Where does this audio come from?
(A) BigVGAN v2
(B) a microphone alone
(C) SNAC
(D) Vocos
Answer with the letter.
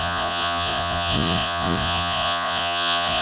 D